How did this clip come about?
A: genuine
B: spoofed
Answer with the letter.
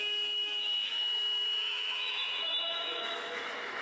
B